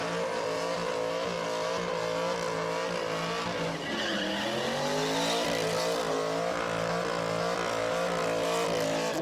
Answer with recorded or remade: recorded